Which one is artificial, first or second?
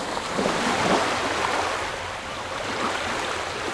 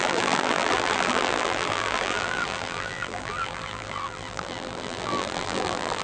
second